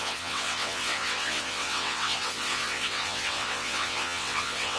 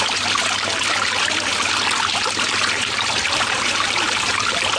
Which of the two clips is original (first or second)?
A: second